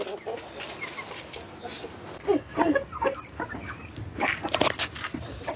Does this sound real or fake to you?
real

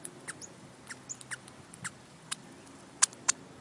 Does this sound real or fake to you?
fake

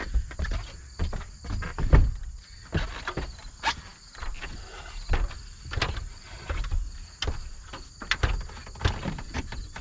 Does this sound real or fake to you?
real